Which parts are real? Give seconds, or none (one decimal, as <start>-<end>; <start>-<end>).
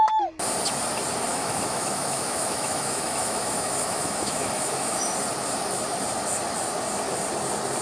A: 0.0-1.3; 5.1-7.8